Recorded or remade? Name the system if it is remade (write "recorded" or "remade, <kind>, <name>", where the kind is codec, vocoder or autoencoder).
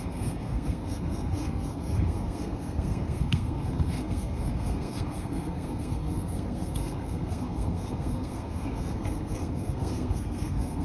remade, codec, SNAC